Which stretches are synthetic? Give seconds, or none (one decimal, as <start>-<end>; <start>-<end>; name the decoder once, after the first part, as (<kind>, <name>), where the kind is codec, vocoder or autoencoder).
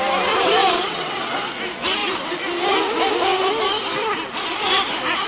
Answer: 0.6-1.3 (vocoder, WaveNeXt)